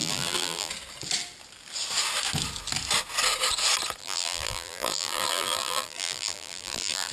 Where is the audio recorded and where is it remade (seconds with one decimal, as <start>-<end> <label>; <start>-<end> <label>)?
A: 0.0-0.7 remade; 0.7-4.0 recorded; 4.0-7.1 remade